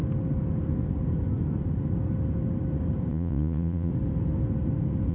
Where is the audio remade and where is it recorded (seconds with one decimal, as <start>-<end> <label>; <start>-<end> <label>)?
0.0-3.1 recorded; 3.1-3.9 remade; 3.9-5.1 recorded